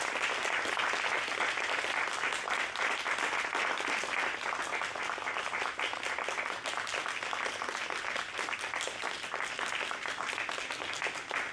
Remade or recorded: recorded